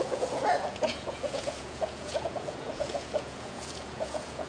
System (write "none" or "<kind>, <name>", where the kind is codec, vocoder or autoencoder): vocoder, Vocos